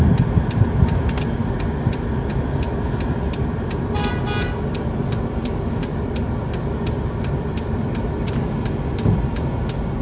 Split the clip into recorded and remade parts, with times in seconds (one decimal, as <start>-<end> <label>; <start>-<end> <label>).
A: 0.0-10.0 recorded